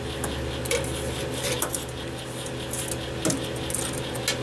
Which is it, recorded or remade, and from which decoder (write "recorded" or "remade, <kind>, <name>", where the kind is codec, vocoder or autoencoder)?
recorded